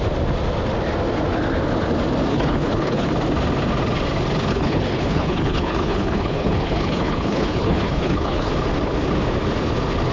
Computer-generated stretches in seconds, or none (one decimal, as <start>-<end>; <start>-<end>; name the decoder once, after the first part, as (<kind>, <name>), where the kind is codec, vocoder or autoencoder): 2.3-3.1 (codec, HILCodec); 4.5-8.5